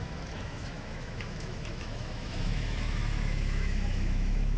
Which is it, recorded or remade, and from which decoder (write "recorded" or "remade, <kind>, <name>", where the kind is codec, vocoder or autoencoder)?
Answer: remade, autoencoder, DAC-VAE